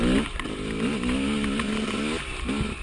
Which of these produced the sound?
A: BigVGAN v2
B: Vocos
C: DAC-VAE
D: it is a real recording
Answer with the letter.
D